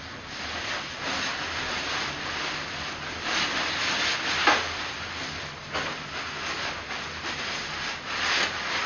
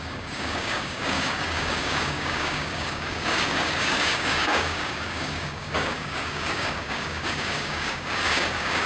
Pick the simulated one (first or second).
second